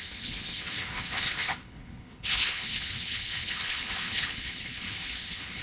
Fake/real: fake